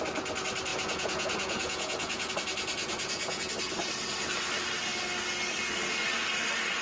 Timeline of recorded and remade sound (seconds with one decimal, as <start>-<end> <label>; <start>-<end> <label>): 0.0-0.7 recorded; 0.7-2.3 remade; 2.3-2.8 recorded; 2.8-3.5 remade; 3.5-6.8 recorded